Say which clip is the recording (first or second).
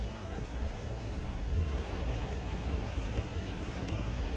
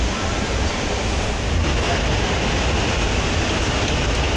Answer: second